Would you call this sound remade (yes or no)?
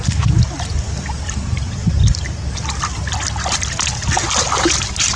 no